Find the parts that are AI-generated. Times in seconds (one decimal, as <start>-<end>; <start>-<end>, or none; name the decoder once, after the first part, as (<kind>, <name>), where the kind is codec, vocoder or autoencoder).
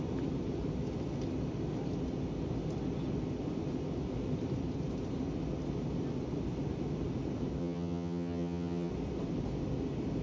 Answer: 7.6-8.9 (vocoder, HiFi-GAN)